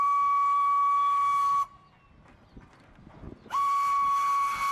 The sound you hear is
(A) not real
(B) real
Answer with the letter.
B